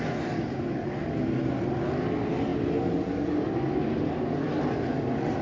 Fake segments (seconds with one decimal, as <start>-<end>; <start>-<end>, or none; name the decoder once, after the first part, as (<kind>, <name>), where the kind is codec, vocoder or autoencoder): none